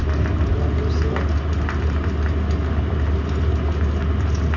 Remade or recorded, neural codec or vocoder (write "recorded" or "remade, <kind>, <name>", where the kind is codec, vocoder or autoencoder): recorded